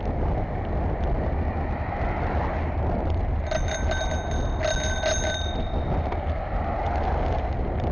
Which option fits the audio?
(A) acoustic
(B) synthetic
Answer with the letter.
A